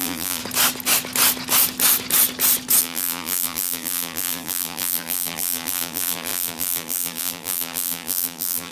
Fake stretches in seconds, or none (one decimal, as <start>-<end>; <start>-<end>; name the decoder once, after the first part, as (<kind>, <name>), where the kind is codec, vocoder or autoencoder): 0.0-0.4 (vocoder, BigVGAN v2); 2.8-8.7